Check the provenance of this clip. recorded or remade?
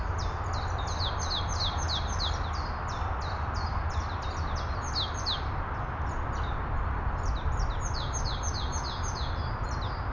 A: recorded